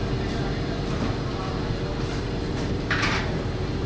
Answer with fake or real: fake